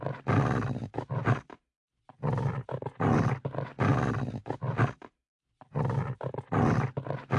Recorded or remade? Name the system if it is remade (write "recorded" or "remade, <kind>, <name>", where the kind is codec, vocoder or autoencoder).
recorded